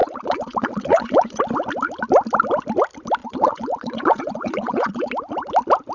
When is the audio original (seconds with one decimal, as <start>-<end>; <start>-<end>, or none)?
1.4-3.2; 5.1-5.9

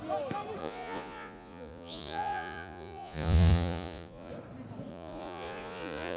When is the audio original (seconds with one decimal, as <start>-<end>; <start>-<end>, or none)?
0.0-0.6; 4.3-4.9

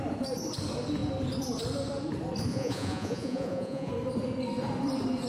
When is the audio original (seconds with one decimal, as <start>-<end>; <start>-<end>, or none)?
0.0-2.5; 3.9-5.3

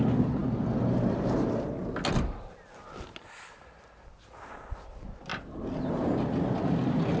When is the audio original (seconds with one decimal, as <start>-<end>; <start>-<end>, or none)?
0.0-7.2